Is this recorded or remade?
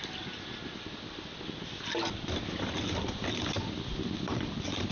recorded